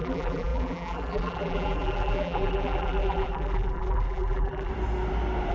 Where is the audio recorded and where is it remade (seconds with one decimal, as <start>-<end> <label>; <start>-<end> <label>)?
0.0-4.7 remade; 4.7-5.5 recorded